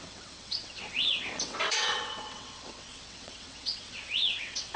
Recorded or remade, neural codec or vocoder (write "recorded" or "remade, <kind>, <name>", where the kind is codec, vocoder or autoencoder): remade, vocoder, WaveNeXt